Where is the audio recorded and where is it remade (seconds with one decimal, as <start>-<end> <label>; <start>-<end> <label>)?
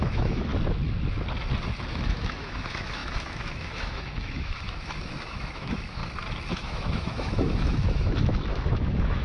0.0-0.5 remade; 0.5-1.9 recorded; 1.9-6.0 remade; 6.0-6.5 recorded; 6.5-9.2 remade